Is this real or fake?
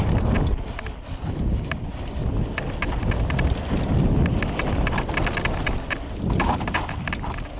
real